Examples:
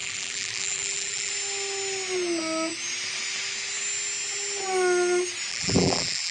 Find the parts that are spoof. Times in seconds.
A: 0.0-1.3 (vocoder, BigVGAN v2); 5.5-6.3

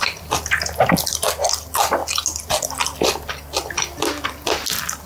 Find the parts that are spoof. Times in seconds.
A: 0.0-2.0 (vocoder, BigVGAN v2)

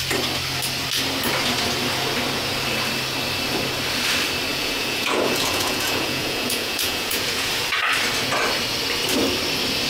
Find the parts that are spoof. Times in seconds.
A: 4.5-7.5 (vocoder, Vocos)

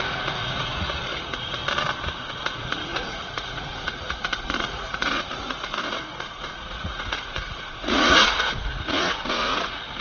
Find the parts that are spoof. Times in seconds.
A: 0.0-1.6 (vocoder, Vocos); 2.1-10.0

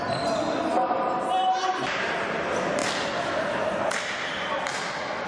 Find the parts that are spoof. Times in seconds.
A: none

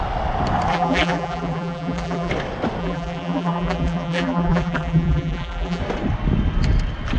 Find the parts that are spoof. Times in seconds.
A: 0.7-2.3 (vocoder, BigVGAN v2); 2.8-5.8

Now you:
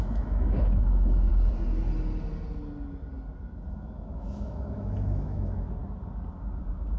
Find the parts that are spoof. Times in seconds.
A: 0.0-1.3 (autoencoder, DAC-VAE); 3.7-5.8; 6.6-7.0

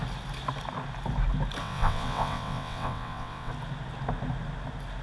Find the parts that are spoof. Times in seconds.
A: 1.6-3.5 (vocoder, WaveNeXt)